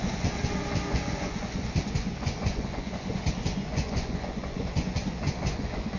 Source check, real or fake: fake